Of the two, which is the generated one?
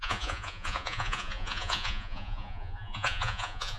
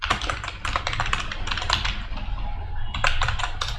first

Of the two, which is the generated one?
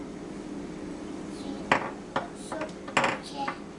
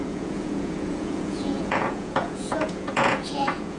second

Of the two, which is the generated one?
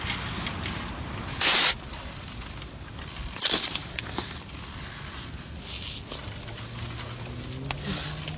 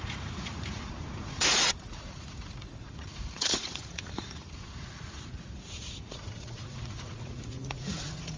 second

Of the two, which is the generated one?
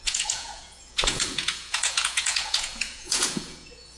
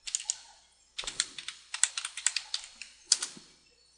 first